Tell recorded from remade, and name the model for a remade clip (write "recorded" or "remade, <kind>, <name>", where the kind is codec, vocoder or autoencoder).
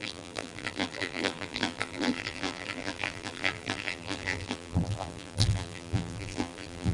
remade, vocoder, BigVGAN v2